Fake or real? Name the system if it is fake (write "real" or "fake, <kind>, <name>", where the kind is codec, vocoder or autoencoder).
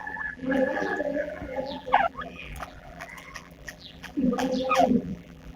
fake, vocoder, BigVGAN v2